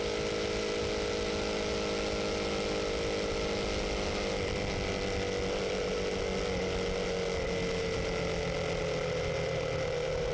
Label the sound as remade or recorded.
recorded